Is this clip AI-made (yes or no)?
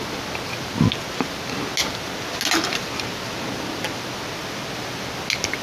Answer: no